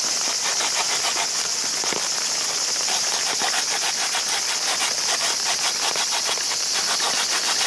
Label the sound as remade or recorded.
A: remade